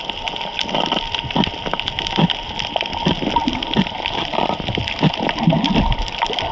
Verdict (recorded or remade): recorded